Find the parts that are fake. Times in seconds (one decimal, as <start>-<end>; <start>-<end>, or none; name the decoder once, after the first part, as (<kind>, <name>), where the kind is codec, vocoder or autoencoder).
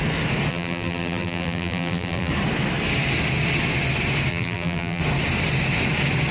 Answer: 0.5-2.3 (vocoder, BigVGAN v2); 4.3-5.0